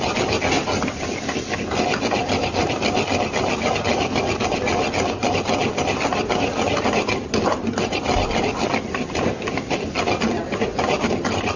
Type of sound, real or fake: real